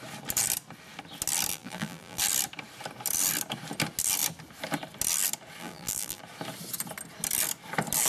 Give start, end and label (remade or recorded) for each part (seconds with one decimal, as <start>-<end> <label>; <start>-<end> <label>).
0.0-1.5 recorded; 1.5-2.2 remade; 2.2-5.6 recorded; 5.6-6.2 remade; 6.2-8.1 recorded